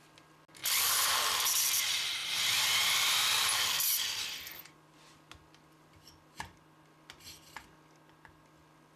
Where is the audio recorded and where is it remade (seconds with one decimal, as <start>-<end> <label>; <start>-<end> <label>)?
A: 0.0-0.6 recorded; 0.6-1.5 remade; 1.5-2.2 recorded; 2.2-4.3 remade; 4.3-9.0 recorded